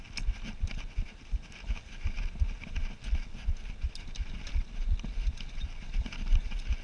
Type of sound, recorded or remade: recorded